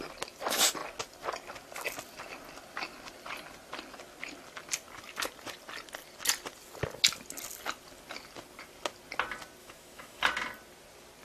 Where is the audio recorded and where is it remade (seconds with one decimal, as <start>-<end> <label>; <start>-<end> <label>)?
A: 0.0-9.6 recorded; 9.6-10.2 remade; 10.2-11.2 recorded